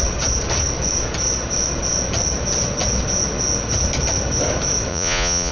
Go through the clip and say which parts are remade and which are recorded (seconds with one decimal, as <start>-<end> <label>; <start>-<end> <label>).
0.0-4.9 recorded; 4.9-5.5 remade